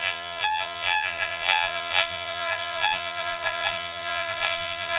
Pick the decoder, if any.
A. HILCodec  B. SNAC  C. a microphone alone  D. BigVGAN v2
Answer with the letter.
D